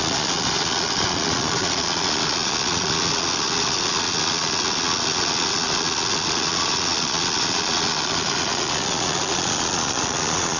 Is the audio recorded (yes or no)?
no